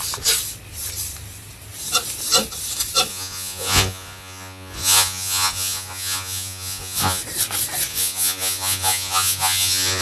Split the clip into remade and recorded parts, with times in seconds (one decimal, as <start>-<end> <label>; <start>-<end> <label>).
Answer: 0.0-3.1 recorded; 3.1-7.2 remade; 7.2-7.9 recorded; 7.9-10.0 remade

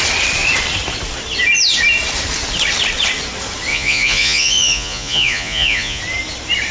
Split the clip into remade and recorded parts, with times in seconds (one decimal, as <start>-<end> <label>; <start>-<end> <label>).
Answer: 0.0-3.7 recorded; 3.7-6.0 remade; 6.0-6.7 recorded

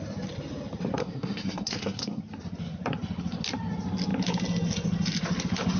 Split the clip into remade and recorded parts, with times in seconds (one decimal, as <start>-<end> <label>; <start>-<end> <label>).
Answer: 0.0-1.0 recorded; 1.0-2.2 remade; 2.2-5.8 recorded

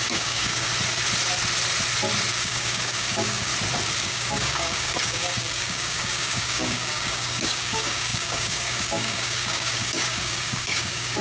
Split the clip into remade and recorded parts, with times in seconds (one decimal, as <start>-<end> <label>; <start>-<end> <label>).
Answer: 0.0-0.7 remade; 0.7-2.3 recorded; 2.3-3.5 remade; 3.5-4.0 recorded; 4.0-11.2 remade

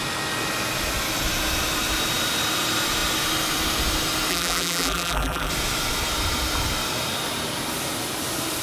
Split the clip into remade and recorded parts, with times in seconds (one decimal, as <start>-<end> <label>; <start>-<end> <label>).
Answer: 0.0-4.3 recorded; 4.3-5.5 remade; 5.5-8.6 recorded

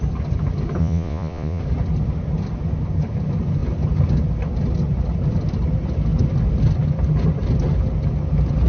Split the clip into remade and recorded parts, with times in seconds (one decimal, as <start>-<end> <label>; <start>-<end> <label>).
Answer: 0.0-0.8 recorded; 0.8-1.6 remade; 1.6-8.7 recorded

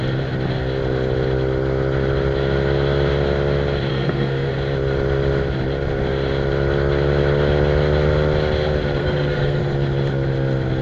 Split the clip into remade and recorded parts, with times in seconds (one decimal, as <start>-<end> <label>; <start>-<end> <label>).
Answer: 0.0-3.9 recorded; 3.9-4.5 remade; 4.5-9.0 recorded; 9.0-9.6 remade; 9.6-10.8 recorded

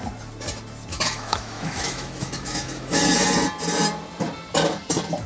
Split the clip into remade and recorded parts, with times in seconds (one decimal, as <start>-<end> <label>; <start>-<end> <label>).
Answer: 0.0-0.9 recorded; 0.9-3.0 remade; 3.0-5.3 recorded